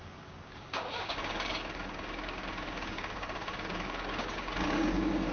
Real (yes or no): no